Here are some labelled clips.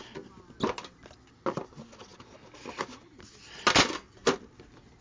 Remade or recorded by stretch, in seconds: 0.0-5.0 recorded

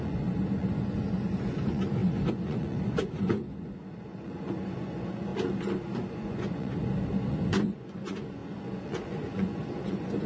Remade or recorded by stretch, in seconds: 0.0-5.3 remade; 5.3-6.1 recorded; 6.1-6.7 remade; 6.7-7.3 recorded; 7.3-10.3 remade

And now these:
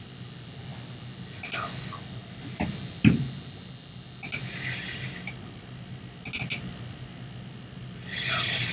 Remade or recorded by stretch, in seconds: 0.0-8.7 recorded

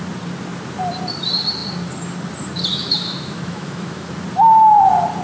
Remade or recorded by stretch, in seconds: 0.0-2.7 recorded; 2.7-4.1 remade; 4.1-5.2 recorded

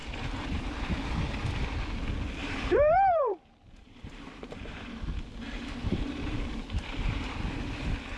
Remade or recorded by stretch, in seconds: 0.0-2.4 recorded; 2.4-5.0 remade; 5.0-5.8 recorded; 5.8-7.4 remade; 7.4-8.2 recorded